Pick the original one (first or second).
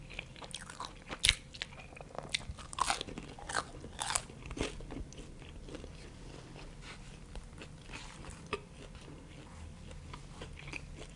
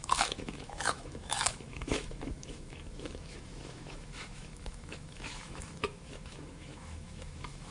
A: first